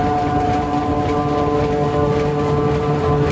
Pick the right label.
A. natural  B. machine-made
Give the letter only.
B